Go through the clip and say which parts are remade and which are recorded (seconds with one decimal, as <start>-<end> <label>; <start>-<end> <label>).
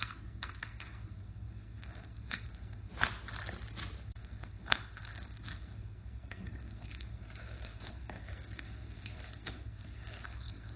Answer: 0.0-2.9 remade; 2.9-4.0 recorded; 4.0-10.8 remade